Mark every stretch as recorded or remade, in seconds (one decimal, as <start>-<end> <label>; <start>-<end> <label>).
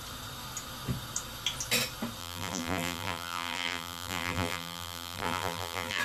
0.0-2.2 recorded; 2.2-6.0 remade